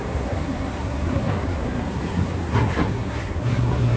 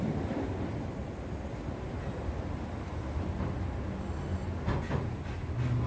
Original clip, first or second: second